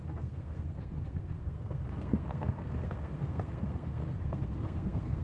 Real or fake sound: fake